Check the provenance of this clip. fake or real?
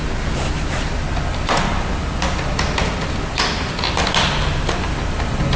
real